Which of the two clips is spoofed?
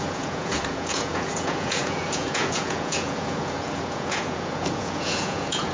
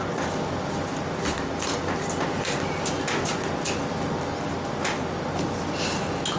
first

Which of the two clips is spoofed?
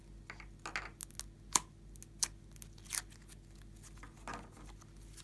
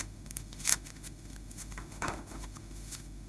second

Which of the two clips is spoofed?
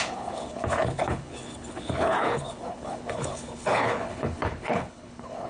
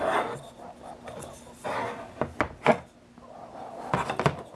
first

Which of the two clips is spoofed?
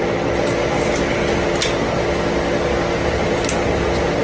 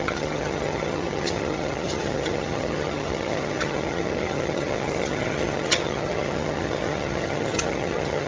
second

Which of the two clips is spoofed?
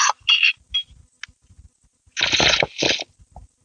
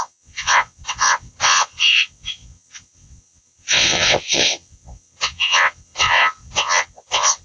second